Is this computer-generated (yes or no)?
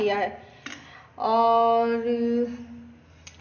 no